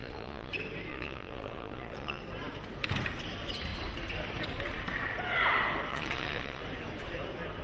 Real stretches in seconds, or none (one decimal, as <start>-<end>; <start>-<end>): 0.5-0.9; 2.2-5.9; 6.6-7.6